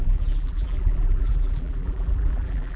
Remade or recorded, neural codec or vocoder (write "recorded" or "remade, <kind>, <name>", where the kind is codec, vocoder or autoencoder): remade, vocoder, BigVGAN v2